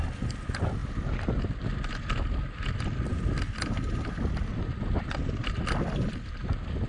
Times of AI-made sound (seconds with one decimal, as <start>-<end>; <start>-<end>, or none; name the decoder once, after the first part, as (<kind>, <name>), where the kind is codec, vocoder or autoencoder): none